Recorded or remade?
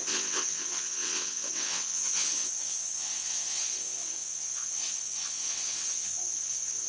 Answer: remade